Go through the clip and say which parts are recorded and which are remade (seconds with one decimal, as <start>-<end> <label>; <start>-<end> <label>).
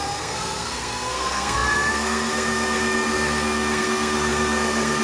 0.0-5.0 remade